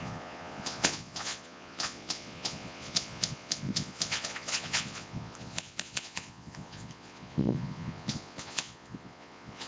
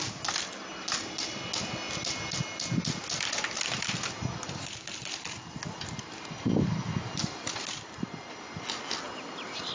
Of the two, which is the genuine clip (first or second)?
second